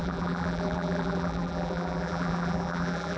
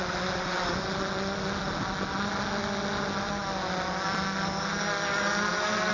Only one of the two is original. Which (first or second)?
second